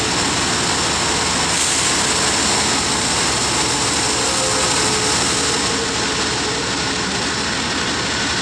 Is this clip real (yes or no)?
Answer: yes